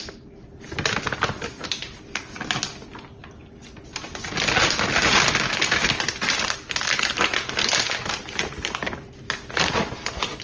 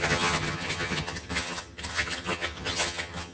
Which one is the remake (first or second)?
second